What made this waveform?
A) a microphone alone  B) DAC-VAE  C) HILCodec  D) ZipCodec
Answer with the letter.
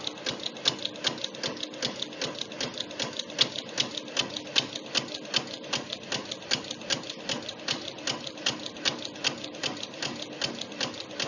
A